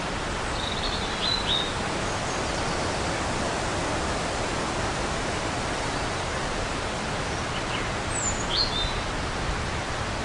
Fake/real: real